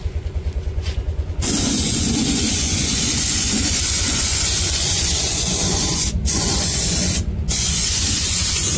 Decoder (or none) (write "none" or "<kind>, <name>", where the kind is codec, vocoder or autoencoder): vocoder, Vocos